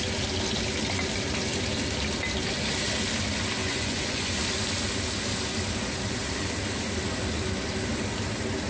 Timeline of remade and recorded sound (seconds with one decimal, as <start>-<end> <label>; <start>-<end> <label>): 0.0-3.6 recorded; 3.6-4.3 remade; 4.3-8.7 recorded